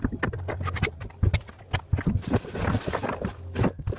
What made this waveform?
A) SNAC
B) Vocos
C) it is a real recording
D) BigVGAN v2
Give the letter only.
C